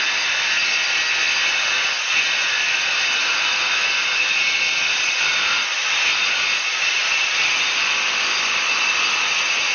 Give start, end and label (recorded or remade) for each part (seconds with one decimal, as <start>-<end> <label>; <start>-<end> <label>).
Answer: 0.0-9.7 recorded